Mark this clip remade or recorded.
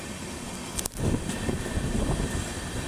recorded